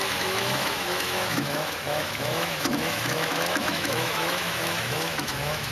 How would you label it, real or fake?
fake